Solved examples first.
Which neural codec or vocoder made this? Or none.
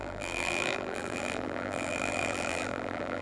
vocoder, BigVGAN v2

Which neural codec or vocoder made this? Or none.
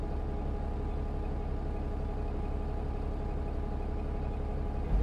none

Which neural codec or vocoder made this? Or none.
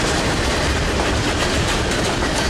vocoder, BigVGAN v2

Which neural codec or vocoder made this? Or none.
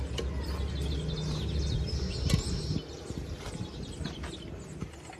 none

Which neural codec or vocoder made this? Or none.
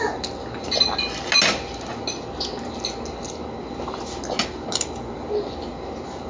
none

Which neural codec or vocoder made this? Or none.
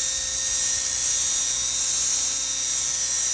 none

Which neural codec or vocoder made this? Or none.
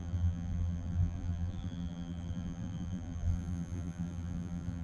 vocoder, BigVGAN v2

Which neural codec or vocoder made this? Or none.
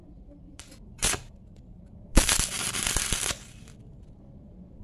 vocoder, BigVGAN v2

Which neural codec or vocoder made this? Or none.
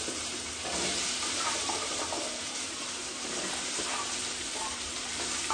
vocoder, BigVGAN v2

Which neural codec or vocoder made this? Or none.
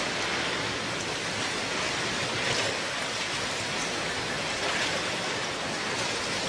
none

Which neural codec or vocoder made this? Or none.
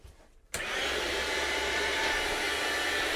vocoder, BigVGAN v2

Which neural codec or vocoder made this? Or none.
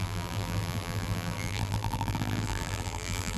vocoder, BigVGAN v2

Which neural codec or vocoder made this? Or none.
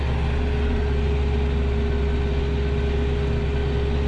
none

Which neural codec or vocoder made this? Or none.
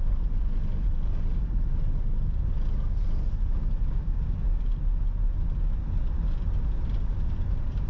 none